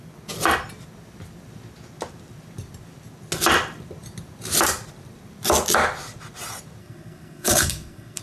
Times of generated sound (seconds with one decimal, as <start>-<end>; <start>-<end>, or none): 6.8-8.2